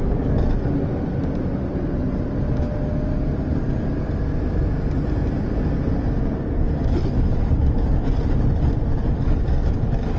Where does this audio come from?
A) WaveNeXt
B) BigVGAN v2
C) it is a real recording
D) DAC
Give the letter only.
C